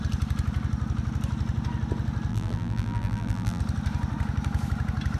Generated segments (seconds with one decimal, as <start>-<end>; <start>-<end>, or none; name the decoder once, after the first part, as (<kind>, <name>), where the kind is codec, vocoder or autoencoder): 2.3-3.6 (vocoder, BigVGAN v2)